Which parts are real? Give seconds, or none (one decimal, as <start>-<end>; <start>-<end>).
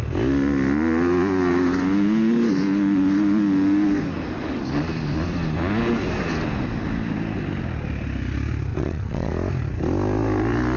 0.0-8.7; 9.3-10.8